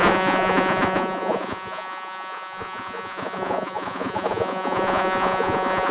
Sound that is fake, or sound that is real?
fake